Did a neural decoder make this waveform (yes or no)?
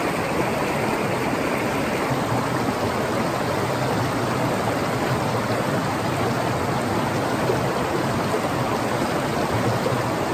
no